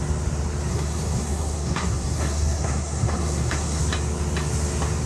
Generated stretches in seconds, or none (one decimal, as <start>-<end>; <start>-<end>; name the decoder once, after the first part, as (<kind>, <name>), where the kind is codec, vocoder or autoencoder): 0.7-3.8 (codec, SNAC)